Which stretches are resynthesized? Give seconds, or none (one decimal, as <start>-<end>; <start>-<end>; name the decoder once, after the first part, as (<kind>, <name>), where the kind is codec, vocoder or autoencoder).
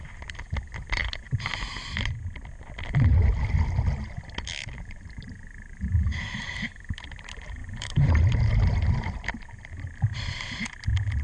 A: 4.6-6.4 (vocoder, BigVGAN v2); 7.6-8.2